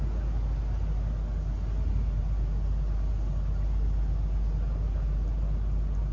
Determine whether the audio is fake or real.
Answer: real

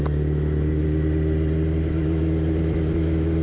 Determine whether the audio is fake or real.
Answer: real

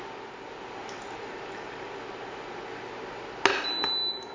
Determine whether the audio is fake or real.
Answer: real